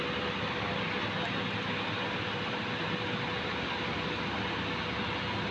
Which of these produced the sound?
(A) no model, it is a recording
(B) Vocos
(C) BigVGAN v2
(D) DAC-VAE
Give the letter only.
A